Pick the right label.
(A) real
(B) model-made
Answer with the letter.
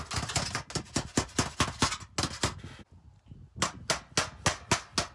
A